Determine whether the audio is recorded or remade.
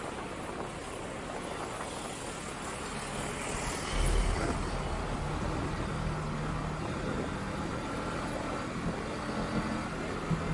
recorded